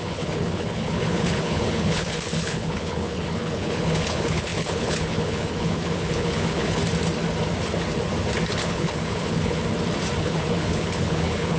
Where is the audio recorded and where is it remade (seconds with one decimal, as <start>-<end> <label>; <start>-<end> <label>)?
0.0-6.8 remade; 6.8-8.5 recorded; 8.5-9.6 remade; 9.6-10.2 recorded; 10.2-11.6 remade